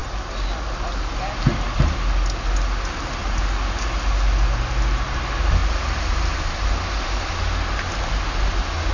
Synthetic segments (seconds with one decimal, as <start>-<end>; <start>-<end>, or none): none